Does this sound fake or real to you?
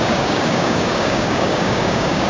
fake